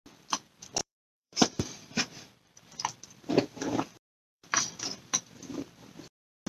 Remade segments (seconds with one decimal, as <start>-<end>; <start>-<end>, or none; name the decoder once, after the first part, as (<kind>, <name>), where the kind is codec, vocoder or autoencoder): 0.8-3.0 (vocoder, BigVGAN v2); 4.3-5.3